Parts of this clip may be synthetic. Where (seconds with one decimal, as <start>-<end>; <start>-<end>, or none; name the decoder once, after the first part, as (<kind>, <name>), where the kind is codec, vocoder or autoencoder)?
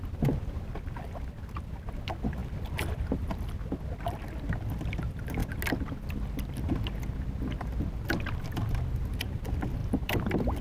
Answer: 9.8-10.6 (vocoder, BigVGAN v2)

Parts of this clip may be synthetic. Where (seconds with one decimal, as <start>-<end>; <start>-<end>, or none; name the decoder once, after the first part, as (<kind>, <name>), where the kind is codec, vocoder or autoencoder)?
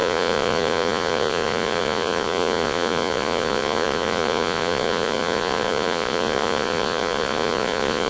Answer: 0.0-8.1 (vocoder, Vocos)